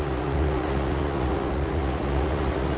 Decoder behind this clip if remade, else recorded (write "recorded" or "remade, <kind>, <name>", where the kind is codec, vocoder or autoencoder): remade, vocoder, Vocos